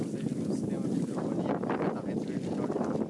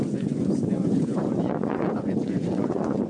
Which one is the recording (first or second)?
first